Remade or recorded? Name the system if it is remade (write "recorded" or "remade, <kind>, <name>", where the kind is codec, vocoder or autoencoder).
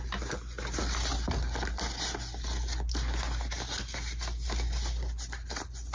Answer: recorded